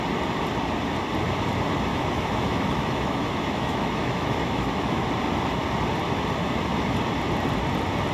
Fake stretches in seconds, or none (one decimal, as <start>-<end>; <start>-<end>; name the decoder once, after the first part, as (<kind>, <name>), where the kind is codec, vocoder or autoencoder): 1.9-5.1 (autoencoder, DAC-VAE)